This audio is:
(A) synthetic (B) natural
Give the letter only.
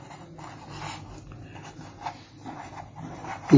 B